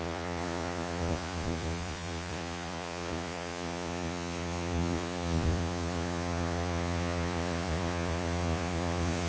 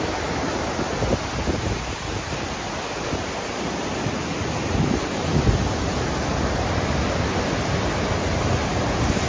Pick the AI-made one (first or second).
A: first